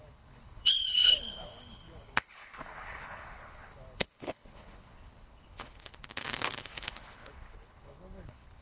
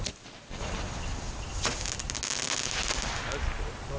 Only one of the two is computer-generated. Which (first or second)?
first